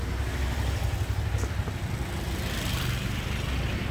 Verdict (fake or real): real